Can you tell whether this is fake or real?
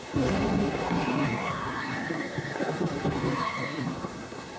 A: fake